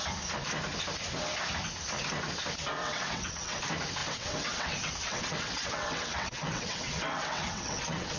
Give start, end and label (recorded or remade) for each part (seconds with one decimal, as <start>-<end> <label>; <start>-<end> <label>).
0.0-2.8 recorded; 2.8-3.6 remade; 3.6-4.0 recorded; 4.0-8.2 remade